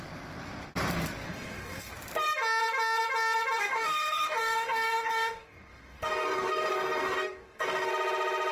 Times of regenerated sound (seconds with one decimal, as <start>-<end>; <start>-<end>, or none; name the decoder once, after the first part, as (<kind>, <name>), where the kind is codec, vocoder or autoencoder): 1.3-1.9 (codec, DAC); 3.6-7.9